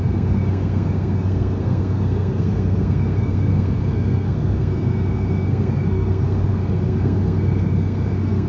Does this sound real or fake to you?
fake